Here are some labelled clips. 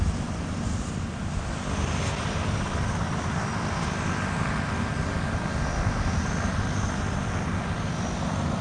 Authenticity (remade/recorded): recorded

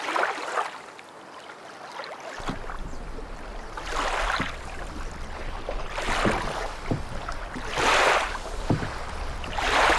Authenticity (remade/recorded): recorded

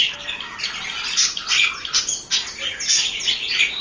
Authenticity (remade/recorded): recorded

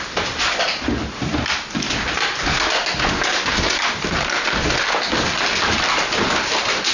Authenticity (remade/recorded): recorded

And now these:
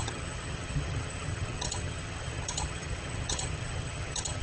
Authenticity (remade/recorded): remade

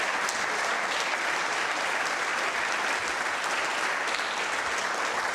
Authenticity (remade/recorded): recorded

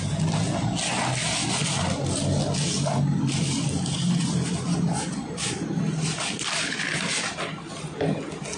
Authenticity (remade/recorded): recorded